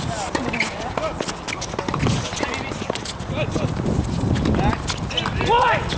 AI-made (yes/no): no